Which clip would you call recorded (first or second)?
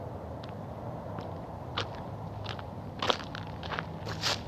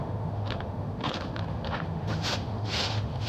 first